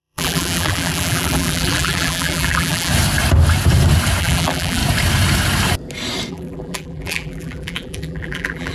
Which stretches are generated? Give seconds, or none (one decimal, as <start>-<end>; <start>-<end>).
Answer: 0.0-2.9; 4.2-4.8; 6.3-8.7